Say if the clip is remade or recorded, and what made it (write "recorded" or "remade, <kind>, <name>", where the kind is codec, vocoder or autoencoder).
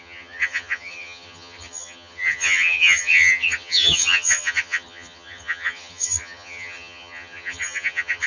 remade, vocoder, HiFi-GAN